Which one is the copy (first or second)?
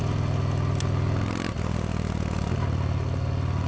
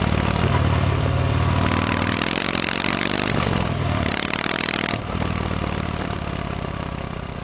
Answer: second